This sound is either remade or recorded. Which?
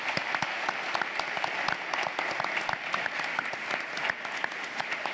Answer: recorded